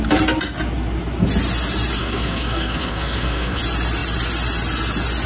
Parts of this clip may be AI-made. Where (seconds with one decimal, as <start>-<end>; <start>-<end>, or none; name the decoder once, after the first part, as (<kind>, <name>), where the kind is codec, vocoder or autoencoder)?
2.0-3.6 (codec, SNAC)